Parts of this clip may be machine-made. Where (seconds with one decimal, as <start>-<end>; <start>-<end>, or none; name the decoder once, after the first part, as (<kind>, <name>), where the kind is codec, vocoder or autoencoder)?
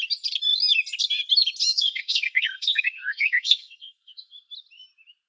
1.7-4.3 (codec, SNAC)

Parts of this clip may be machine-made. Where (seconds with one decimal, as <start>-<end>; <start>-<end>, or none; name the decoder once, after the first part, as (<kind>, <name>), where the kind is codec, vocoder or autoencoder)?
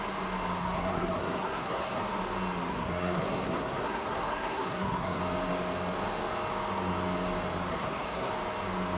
0.6-2.0 (codec, SNAC); 2.7-5.2; 7.7-8.3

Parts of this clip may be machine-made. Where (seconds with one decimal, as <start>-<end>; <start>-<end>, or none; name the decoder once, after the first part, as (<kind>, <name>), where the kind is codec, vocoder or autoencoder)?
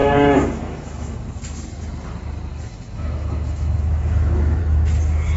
0.0-1.2 (autoencoder, DAC-VAE); 2.5-4.6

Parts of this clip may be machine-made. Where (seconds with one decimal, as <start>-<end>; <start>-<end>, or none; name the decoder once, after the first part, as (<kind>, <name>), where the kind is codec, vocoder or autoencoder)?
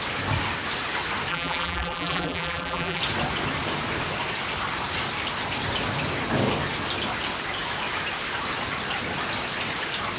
1.3-3.0 (vocoder, BigVGAN v2)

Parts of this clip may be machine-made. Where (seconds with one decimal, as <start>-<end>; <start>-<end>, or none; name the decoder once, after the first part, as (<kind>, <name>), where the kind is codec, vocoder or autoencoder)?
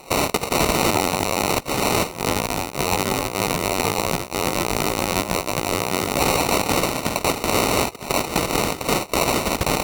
0.9-1.5 (vocoder, BigVGAN v2); 2.1-6.2